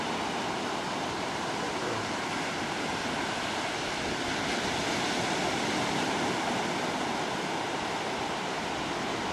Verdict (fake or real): real